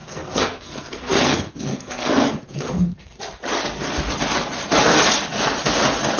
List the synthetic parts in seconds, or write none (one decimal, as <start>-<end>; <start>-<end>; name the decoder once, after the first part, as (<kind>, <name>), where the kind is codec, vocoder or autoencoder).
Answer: 0.0-3.2 (codec, SNAC)

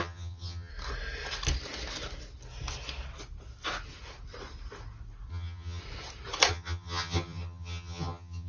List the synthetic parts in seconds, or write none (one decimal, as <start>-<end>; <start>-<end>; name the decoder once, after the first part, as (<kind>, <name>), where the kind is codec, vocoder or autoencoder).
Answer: 0.0-0.7 (vocoder, HiFi-GAN); 5.3-5.8; 6.5-8.5

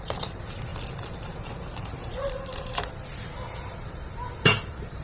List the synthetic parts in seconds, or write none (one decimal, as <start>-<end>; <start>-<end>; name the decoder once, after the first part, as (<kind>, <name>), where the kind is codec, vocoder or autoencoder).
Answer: 0.0-0.7 (vocoder, BigVGAN v2); 3.7-5.0

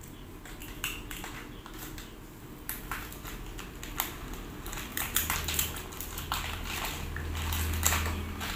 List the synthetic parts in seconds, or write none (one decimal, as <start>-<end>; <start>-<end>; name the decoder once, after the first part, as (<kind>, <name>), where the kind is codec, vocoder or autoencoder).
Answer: 4.9-6.9 (vocoder, BigVGAN v2)

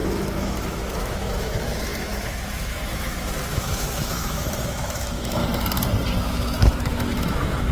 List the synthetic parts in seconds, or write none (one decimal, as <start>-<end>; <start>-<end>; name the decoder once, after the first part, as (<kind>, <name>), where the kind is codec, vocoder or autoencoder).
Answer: 0.0-5.4 (autoencoder, DAC-VAE); 6.2-7.7

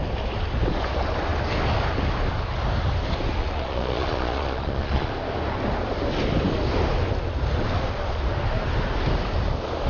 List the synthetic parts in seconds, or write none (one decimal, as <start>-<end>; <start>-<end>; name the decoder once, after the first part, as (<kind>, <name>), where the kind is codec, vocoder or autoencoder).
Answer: 3.4-5.1 (vocoder, Vocos)

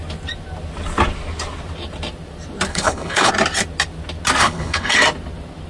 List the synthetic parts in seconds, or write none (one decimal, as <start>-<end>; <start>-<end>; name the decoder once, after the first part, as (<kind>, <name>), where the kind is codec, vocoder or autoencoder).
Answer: 2.7-3.3 (codec, HILCodec); 4.4-4.9

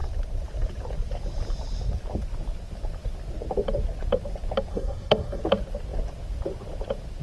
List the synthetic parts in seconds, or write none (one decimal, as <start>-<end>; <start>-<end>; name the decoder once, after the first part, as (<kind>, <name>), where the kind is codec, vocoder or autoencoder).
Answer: 4.7-5.4 (codec, SNAC)